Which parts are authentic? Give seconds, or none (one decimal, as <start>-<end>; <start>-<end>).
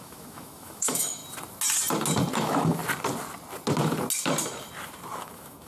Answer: 1.2-2.4; 2.8-5.2